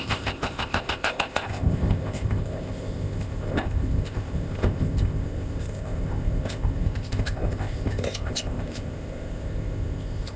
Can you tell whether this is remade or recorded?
remade